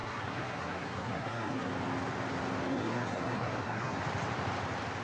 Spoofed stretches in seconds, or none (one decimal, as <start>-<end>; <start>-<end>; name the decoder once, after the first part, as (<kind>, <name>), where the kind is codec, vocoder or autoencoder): 0.0-1.7 (codec, SNAC); 2.7-4.0